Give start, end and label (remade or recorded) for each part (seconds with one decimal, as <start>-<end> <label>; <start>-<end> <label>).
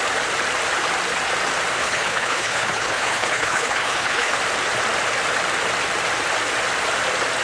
0.0-1.8 recorded; 1.8-4.4 remade; 4.4-7.4 recorded